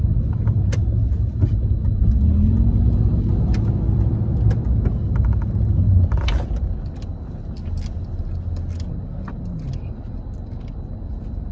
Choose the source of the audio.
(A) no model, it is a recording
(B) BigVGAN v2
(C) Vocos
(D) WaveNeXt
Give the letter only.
A